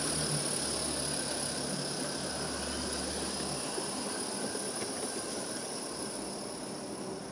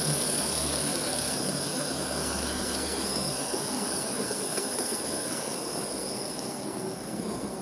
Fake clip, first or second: second